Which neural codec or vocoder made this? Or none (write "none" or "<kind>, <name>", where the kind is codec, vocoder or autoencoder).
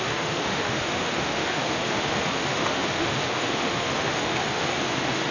autoencoder, DAC-VAE